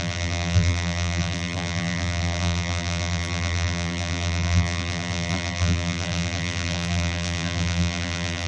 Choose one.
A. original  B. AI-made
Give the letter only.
B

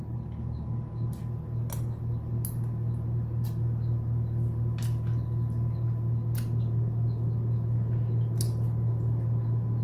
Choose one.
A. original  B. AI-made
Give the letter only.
A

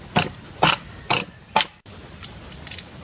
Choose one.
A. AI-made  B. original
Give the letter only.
A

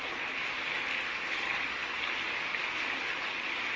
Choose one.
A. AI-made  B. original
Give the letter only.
B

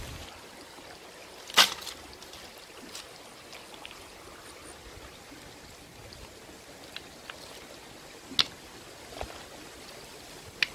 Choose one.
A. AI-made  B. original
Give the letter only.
B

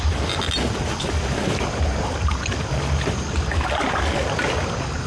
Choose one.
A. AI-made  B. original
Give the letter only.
B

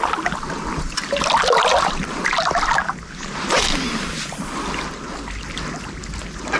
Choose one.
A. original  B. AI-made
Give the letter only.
A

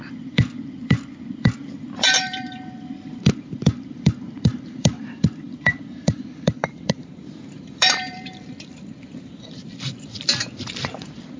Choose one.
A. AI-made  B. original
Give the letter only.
A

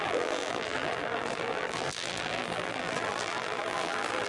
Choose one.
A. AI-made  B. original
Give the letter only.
A